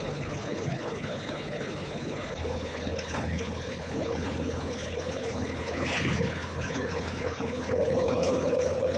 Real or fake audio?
fake